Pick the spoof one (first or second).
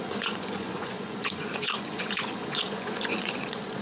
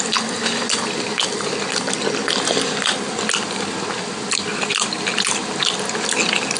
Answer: first